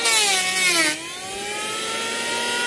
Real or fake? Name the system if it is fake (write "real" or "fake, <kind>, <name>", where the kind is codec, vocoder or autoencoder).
real